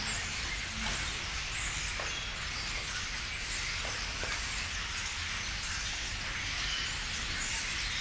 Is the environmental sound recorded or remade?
recorded